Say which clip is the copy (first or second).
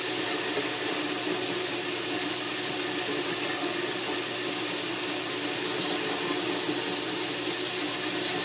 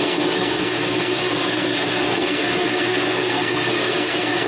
second